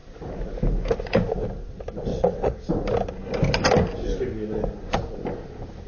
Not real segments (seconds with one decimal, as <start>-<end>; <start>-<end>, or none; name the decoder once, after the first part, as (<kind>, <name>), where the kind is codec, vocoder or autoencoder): 2.1-2.7 (vocoder, WaveNeXt)